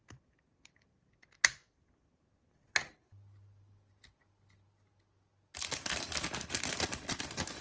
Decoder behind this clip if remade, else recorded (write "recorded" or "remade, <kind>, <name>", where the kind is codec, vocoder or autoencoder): recorded